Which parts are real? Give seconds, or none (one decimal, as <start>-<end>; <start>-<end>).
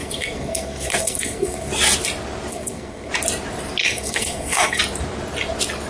1.7-2.5; 3.1-3.8; 4.8-5.9